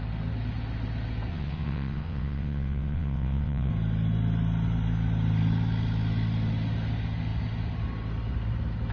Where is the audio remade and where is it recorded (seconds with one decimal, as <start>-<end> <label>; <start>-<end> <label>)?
0.0-1.3 recorded; 1.3-3.7 remade; 3.7-8.9 recorded